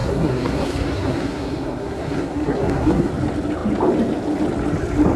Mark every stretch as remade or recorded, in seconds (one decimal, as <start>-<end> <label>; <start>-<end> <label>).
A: 0.0-3.1 remade; 3.1-5.2 recorded